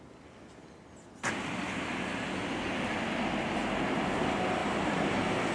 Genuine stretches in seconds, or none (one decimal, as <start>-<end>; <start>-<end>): 0.0-4.6